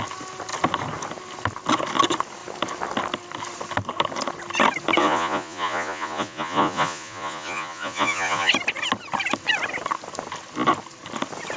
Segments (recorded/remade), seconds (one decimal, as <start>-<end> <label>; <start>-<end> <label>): 0.0-5.0 recorded; 5.0-8.5 remade; 8.5-11.6 recorded